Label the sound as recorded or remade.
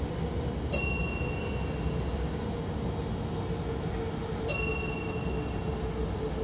recorded